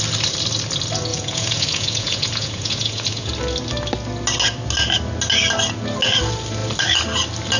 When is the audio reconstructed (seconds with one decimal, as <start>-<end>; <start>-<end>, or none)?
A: 1.1-3.3